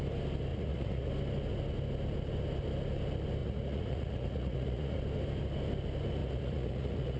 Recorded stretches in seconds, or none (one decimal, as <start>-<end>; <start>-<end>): 0.0-0.5; 1.1-3.4; 5.0-6.2